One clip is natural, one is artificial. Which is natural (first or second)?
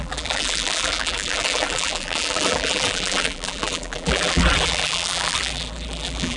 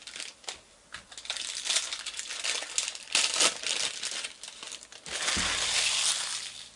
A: second